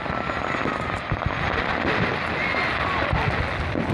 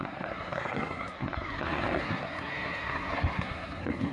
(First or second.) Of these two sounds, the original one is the first